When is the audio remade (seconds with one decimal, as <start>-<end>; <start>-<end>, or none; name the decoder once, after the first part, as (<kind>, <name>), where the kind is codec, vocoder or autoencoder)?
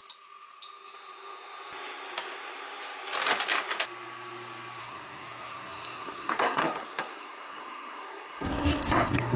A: 4.8-9.4 (codec, SNAC)